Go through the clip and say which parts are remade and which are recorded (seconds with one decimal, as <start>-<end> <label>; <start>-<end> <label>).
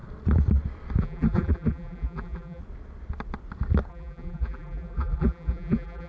0.0-1.0 recorded; 1.0-2.6 remade; 2.6-3.9 recorded; 3.9-6.1 remade